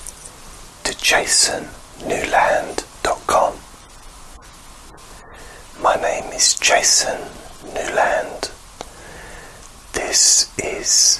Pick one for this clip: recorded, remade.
recorded